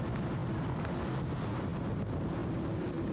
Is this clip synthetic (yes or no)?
no